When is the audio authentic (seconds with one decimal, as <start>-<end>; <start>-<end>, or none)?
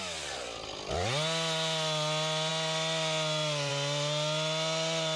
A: 0.0-5.2